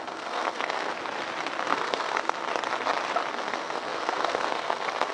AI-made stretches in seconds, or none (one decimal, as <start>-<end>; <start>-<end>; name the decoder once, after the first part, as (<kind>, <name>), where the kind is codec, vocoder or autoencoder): 0.0-0.9 (codec, SNAC); 1.6-2.5; 3.3-5.1